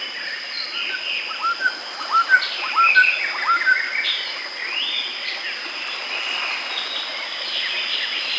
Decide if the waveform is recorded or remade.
recorded